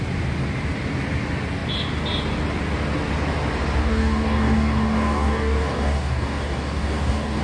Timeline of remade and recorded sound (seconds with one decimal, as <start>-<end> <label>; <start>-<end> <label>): 0.0-3.8 recorded; 3.8-7.4 remade